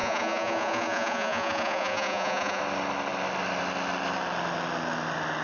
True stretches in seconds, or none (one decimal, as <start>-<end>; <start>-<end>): 2.6-5.4